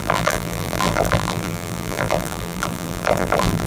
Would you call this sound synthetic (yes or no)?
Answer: yes